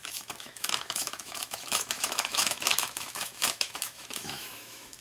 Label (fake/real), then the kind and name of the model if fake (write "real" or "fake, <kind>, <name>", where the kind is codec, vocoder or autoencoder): fake, autoencoder, DAC-VAE